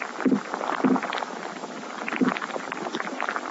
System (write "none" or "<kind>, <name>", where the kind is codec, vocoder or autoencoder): vocoder, BigVGAN v2